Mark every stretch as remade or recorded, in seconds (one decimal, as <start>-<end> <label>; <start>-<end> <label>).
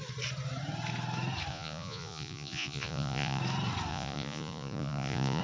0.0-1.5 recorded; 1.5-3.4 remade; 3.4-3.9 recorded; 3.9-5.4 remade